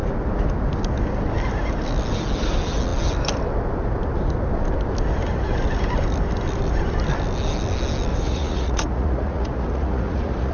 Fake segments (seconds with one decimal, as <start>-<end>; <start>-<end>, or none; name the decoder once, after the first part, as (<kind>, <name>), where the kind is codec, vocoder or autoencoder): 8.1-10.5 (vocoder, Vocos)